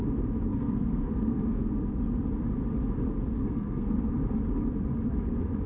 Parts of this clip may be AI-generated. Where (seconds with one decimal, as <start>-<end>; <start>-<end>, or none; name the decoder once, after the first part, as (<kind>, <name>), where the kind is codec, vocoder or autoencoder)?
0.5-1.7 (codec, SNAC); 3.4-4.1